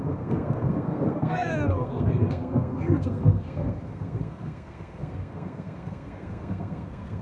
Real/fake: fake